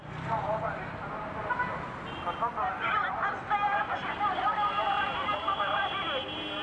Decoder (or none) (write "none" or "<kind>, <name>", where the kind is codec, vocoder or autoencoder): none